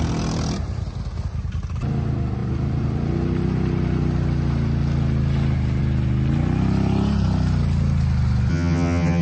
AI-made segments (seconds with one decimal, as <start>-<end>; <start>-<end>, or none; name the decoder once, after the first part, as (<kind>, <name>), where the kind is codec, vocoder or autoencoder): 8.5-9.2 (vocoder, HiFi-GAN)